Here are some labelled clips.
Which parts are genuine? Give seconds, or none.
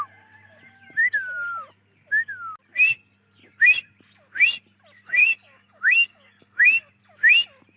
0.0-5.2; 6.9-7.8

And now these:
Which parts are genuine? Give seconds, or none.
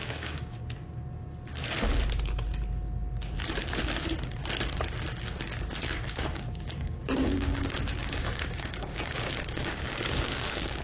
0.6-5.8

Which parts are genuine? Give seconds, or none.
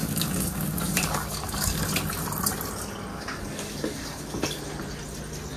1.8-3.1; 4.6-5.6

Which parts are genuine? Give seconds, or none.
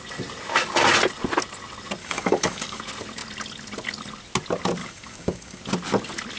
0.0-2.0; 2.8-4.8; 5.6-6.4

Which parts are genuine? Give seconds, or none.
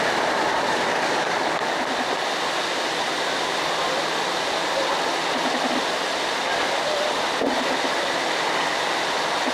0.0-0.5; 1.7-9.5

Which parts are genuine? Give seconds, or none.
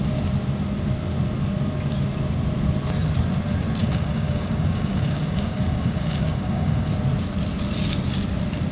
0.0-3.8; 6.9-8.7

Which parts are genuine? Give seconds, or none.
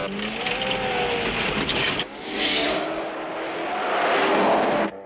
0.0-1.7; 3.0-5.1